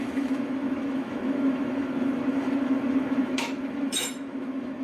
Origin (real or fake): fake